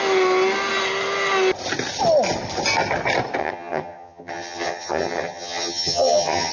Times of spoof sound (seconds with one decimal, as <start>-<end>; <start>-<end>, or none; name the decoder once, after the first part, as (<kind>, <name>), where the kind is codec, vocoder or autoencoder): 3.4-6.5 (vocoder, HiFi-GAN)